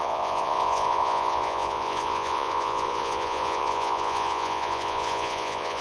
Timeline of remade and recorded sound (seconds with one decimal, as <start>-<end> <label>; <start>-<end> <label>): 0.0-5.8 remade